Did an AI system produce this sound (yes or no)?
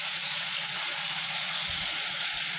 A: yes